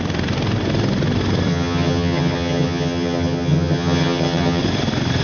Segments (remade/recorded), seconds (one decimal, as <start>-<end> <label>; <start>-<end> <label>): 0.0-1.5 recorded; 1.5-4.6 remade; 4.6-5.2 recorded